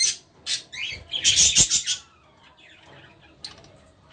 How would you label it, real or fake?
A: real